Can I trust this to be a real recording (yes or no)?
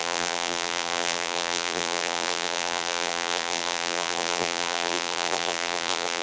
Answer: no